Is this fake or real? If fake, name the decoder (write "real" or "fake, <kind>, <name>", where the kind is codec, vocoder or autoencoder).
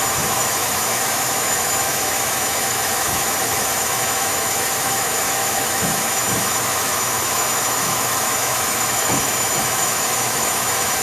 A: fake, autoencoder, DAC-VAE